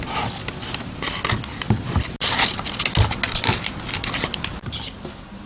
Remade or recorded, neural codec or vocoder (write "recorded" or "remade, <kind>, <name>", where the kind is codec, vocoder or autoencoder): recorded